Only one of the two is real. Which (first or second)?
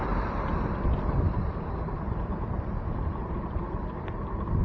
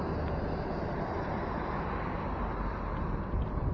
second